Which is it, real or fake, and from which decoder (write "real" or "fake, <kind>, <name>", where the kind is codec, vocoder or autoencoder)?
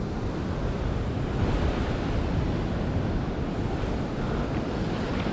real